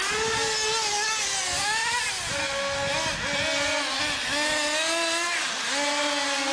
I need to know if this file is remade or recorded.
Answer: recorded